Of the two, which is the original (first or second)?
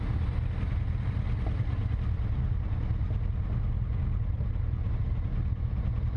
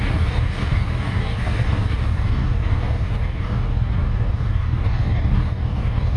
first